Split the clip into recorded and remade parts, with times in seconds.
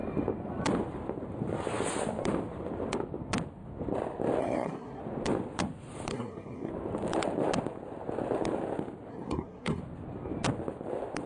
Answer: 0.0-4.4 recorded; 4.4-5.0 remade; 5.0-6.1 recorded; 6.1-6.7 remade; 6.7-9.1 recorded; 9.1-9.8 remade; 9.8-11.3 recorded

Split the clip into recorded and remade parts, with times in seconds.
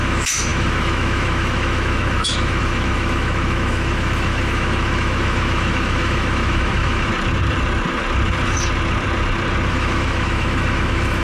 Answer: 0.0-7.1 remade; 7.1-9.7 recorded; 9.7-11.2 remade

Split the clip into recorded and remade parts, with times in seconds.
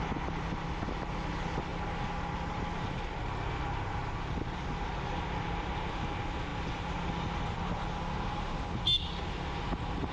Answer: 0.0-10.1 recorded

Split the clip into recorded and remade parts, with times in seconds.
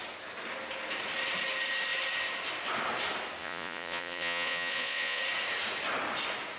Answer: 0.0-3.4 recorded; 3.4-5.2 remade; 5.2-6.6 recorded